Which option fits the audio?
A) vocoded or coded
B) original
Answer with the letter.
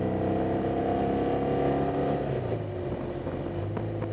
B